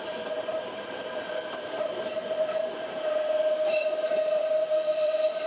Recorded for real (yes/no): no